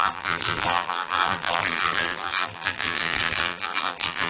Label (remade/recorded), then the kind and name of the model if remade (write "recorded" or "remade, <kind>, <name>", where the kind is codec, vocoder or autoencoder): remade, vocoder, BigVGAN v2